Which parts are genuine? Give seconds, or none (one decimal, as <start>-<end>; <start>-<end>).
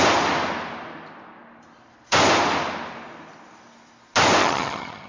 0.0-4.4